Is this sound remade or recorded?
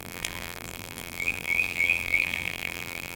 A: remade